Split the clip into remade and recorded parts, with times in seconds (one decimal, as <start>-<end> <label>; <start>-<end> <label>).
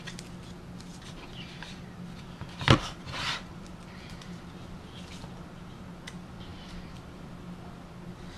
0.0-0.9 recorded; 0.9-4.8 remade; 4.8-6.5 recorded; 6.5-7.3 remade; 7.3-8.4 recorded